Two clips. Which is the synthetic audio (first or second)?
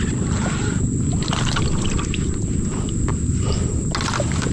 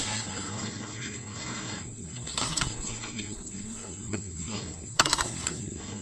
second